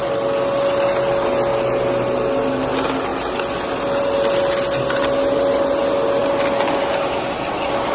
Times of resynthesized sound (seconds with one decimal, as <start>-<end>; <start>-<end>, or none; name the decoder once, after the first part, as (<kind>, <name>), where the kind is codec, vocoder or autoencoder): none